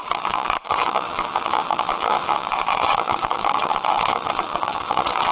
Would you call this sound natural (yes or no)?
no